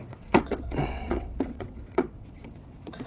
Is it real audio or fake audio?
fake